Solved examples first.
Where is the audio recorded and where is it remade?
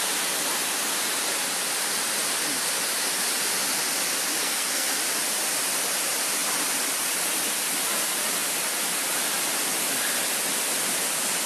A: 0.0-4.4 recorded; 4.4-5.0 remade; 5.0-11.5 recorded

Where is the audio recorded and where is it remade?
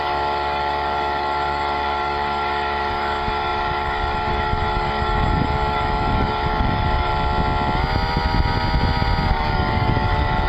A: 0.0-7.1 remade; 7.1-9.3 recorded; 9.3-10.5 remade